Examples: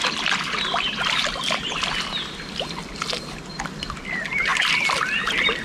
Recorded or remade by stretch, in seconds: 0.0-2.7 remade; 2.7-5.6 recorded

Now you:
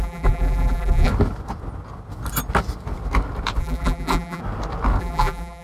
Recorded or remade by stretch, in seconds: 0.0-1.1 remade; 1.1-3.6 recorded; 3.6-4.4 remade; 4.4-5.0 recorded; 5.0-5.6 remade

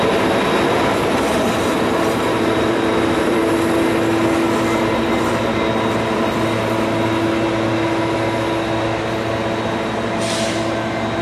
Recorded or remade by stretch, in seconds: 0.0-0.9 recorded; 0.9-3.5 remade; 3.5-11.2 recorded

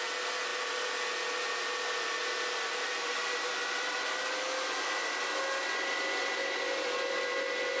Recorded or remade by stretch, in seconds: 0.0-7.8 recorded

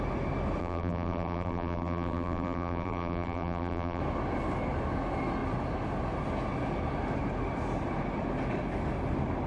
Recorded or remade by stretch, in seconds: 0.0-0.6 recorded; 0.6-4.0 remade; 4.0-9.5 recorded

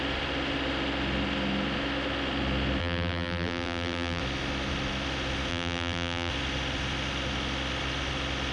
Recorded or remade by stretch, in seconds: 0.0-2.8 recorded; 2.8-4.2 remade; 4.2-5.5 recorded; 5.5-6.3 remade; 6.3-8.5 recorded